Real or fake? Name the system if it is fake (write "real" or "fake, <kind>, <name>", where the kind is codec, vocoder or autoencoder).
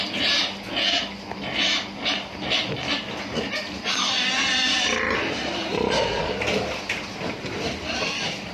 real